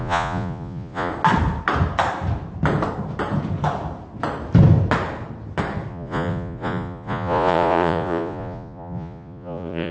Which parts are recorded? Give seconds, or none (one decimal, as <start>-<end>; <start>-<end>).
1.1-5.9